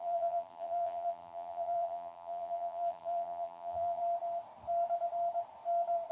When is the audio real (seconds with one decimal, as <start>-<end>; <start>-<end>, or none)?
4.0-6.1